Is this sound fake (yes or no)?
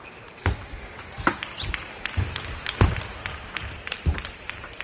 yes